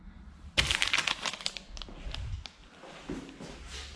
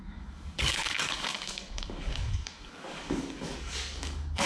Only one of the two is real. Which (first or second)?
first